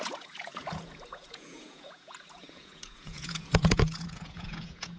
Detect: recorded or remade remade